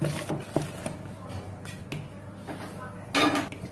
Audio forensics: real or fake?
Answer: real